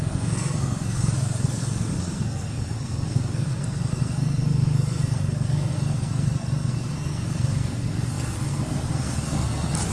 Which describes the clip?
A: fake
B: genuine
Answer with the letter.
A